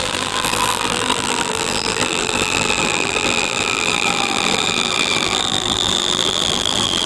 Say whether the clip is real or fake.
fake